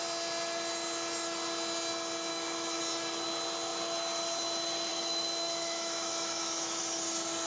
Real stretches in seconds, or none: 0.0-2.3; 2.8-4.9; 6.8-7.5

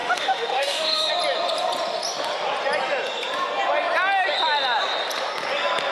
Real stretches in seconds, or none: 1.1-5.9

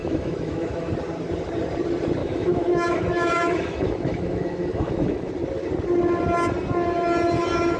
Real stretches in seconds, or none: 0.9-2.2; 5.3-7.8

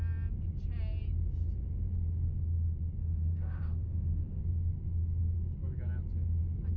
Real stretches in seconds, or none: 0.0-3.0; 4.4-6.8